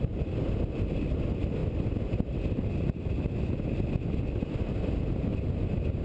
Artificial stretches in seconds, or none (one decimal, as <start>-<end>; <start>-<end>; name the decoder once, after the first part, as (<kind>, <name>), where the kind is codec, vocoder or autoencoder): none